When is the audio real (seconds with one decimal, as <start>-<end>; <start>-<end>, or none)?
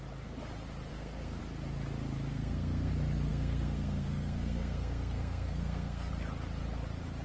0.0-0.9; 1.4-2.3; 2.9-3.3; 6.1-7.2